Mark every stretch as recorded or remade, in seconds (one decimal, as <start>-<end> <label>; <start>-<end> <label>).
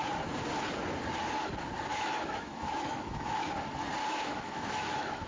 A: 0.0-1.9 recorded; 1.9-3.5 remade; 3.5-4.0 recorded; 4.0-5.3 remade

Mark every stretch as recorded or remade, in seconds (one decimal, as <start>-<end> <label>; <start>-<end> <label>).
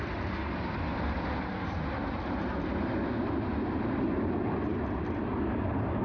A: 0.0-6.0 recorded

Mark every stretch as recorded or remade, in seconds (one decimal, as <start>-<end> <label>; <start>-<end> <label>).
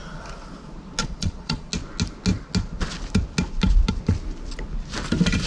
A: 0.0-1.0 recorded; 1.0-1.7 remade; 1.7-5.5 recorded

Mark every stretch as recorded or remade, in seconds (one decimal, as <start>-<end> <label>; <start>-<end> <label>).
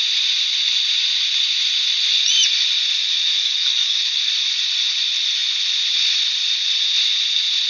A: 0.0-3.4 recorded; 3.4-4.2 remade; 4.2-7.7 recorded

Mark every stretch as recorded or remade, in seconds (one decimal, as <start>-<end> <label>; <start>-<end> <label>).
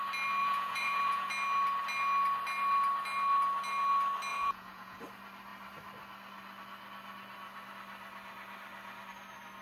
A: 0.0-0.4 recorded; 0.4-1.3 remade; 1.3-4.3 recorded; 4.3-5.0 remade; 5.0-9.6 recorded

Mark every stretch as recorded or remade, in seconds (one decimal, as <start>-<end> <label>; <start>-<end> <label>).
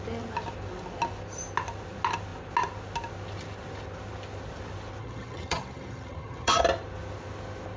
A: 0.0-5.0 recorded; 5.0-6.6 remade; 6.6-7.8 recorded